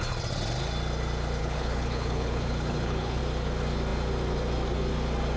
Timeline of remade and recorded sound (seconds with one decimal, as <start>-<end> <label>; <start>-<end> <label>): 0.0-1.4 recorded; 1.4-3.2 remade; 3.2-5.4 recorded